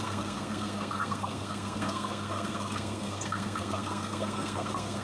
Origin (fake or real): fake